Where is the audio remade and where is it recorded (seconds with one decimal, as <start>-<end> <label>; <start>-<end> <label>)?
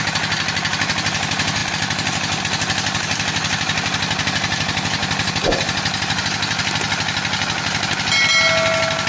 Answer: 0.0-9.1 recorded